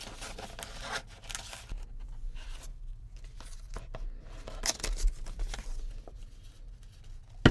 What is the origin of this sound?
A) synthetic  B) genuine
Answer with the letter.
B